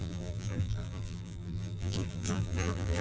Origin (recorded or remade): remade